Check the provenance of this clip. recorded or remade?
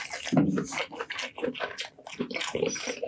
recorded